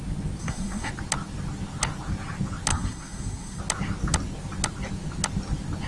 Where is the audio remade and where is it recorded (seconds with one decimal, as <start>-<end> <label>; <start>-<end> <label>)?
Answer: 0.0-0.4 recorded; 0.4-0.9 remade; 0.9-2.7 recorded; 2.7-3.6 remade; 3.6-5.9 recorded